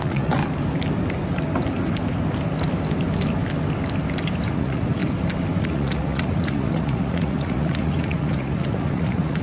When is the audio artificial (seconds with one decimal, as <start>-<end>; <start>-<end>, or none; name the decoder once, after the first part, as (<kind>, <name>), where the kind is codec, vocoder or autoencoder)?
0.0-0.4 (vocoder, Vocos); 4.5-5.0; 5.6-9.4